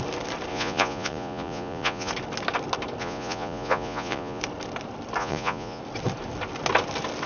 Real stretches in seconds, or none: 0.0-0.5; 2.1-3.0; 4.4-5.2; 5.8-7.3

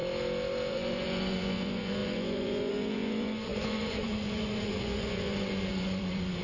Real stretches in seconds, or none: 0.0-0.7